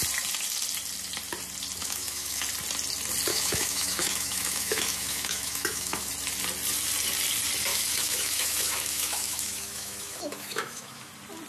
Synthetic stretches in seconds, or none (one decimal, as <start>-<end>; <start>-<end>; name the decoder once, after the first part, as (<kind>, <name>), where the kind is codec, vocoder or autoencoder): 1.8-2.4 (autoencoder, DAC-VAE); 3.3-6.1; 7.7-11.1